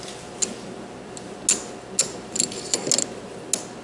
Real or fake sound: real